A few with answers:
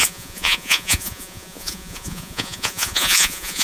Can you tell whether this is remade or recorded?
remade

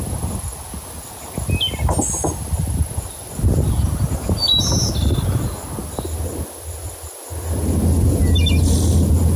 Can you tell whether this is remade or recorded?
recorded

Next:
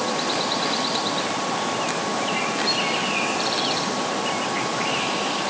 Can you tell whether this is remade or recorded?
recorded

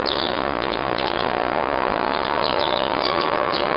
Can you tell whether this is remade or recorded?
remade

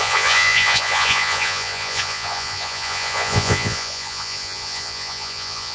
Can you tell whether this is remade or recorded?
remade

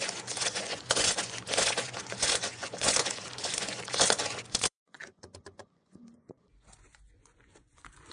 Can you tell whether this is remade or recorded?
remade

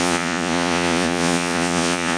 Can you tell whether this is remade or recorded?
remade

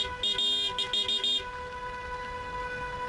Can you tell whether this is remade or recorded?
recorded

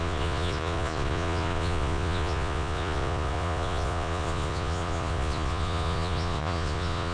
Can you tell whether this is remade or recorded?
remade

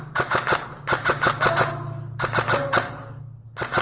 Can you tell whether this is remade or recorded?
recorded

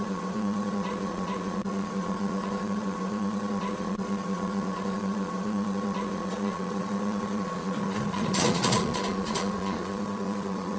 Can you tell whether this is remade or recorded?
remade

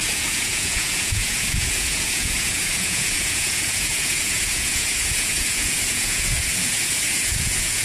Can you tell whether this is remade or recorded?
remade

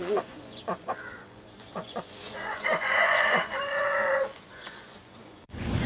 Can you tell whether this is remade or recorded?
remade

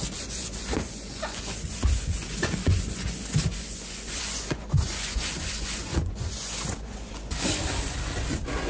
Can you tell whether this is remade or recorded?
remade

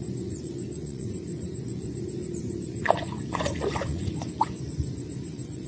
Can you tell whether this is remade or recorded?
remade